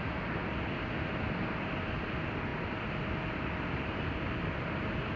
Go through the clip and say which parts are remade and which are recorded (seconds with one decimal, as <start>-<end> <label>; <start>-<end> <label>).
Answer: 0.0-5.2 recorded